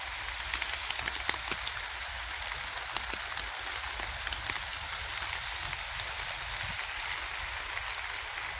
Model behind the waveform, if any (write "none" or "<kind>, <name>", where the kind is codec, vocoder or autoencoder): none